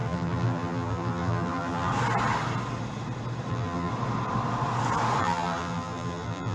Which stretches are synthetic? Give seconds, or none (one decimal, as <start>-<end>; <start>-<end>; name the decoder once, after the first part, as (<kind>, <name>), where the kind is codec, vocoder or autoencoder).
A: 0.0-1.9 (vocoder, BigVGAN v2); 3.5-3.9; 5.2-6.5

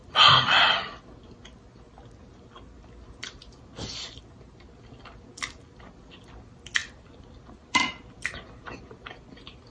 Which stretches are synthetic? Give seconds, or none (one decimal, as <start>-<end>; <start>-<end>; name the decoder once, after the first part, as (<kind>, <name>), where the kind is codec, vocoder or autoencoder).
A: 0.0-1.3 (vocoder, BigVGAN v2); 3.4-4.1; 6.8-9.7

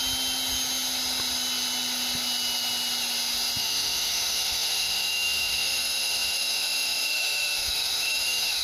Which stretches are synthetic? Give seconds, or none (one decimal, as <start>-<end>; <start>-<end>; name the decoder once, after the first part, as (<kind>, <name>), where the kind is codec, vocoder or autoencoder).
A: 3.6-8.6 (autoencoder, DAC-VAE)

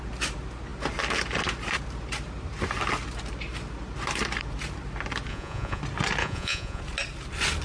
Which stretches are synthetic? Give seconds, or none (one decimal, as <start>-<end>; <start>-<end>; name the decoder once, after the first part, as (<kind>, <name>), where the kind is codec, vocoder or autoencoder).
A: 5.3-5.8 (vocoder, Vocos); 6.2-6.8